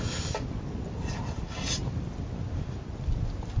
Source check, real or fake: real